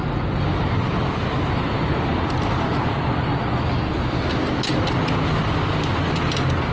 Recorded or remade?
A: recorded